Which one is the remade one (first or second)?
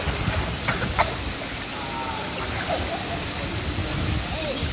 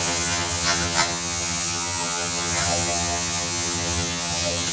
second